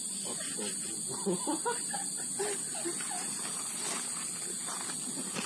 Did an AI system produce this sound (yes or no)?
no